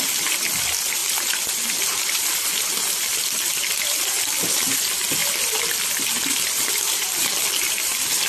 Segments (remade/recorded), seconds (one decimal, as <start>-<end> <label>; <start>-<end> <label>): 0.0-8.3 recorded